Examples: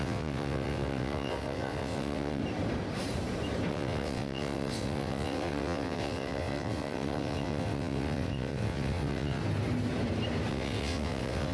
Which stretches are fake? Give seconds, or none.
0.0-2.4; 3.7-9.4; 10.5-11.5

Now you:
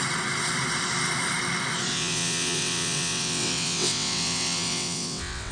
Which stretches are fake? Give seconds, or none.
1.9-5.5

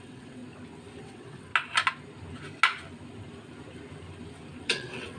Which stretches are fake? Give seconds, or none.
0.0-0.4; 1.0-1.5; 4.6-5.2

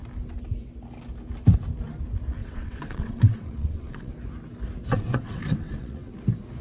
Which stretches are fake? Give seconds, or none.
2.4-4.1; 4.9-6.1